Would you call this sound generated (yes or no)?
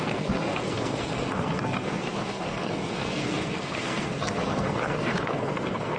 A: yes